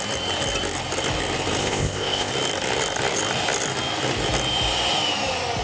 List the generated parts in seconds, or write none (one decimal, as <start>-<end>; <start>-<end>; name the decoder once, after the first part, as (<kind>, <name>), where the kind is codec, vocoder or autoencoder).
1.6-2.3 (codec, ZipCodec)